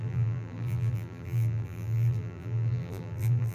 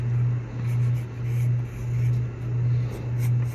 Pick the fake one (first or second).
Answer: first